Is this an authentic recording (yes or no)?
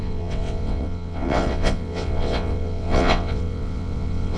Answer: no